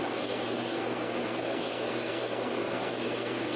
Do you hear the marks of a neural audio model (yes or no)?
yes